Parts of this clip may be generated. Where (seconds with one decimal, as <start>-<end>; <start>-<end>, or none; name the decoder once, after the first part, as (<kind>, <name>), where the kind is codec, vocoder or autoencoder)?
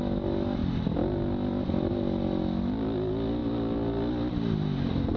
none